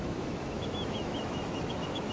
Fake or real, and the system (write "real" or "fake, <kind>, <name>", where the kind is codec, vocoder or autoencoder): fake, autoencoder, DAC-VAE